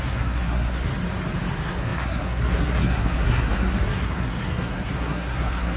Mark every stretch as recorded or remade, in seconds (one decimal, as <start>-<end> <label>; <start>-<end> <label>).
0.0-0.9 remade; 0.9-1.5 recorded; 1.5-5.8 remade